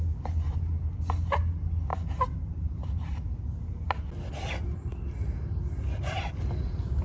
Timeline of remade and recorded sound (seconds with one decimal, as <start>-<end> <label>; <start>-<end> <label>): 0.0-7.0 recorded